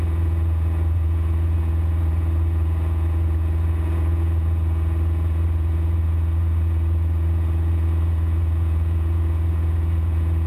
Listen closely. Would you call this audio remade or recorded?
remade